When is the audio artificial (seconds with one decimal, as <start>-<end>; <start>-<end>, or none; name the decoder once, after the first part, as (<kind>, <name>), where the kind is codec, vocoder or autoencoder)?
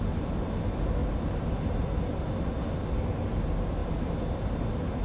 none